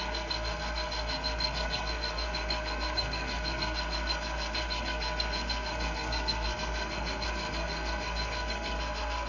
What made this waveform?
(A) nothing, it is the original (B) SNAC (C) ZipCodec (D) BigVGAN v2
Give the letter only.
B